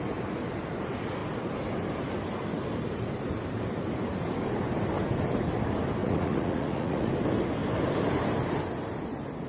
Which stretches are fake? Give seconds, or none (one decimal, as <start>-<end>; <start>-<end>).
6.0-7.1